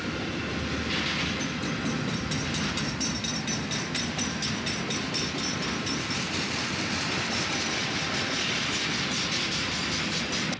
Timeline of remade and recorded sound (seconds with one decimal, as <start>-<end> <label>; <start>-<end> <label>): 0.0-10.6 recorded